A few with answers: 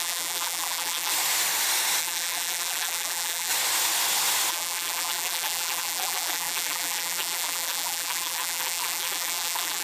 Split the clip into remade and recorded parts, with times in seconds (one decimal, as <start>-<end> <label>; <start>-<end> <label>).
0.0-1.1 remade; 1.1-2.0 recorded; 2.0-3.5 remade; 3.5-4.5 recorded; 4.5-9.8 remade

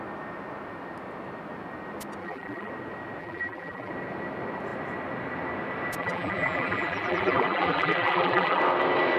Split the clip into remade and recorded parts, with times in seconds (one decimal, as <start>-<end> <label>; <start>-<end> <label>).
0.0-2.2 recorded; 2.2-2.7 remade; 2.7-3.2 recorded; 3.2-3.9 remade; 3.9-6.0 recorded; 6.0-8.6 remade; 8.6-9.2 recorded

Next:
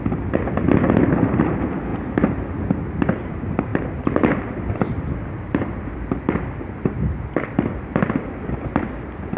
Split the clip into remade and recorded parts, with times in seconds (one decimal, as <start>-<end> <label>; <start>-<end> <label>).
0.0-3.7 recorded; 3.7-8.3 remade; 8.3-9.4 recorded